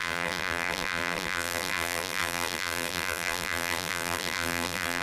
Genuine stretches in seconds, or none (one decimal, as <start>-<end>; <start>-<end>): none